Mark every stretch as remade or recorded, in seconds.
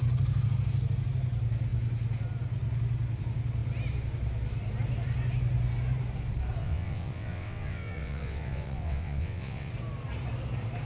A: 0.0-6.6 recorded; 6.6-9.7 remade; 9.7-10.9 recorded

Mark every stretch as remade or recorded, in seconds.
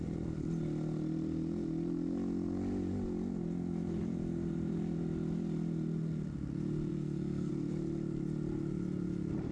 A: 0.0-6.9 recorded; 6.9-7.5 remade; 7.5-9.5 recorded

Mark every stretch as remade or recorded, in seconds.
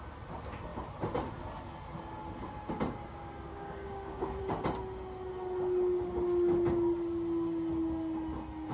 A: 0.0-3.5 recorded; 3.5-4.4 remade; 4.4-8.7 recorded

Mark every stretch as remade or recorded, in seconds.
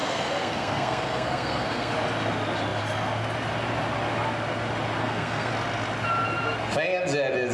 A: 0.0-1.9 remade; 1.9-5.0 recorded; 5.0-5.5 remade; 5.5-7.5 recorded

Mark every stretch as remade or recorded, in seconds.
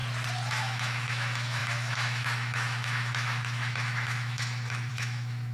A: 0.0-0.5 recorded; 0.5-5.5 remade